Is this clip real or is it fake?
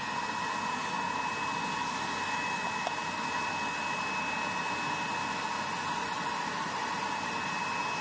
real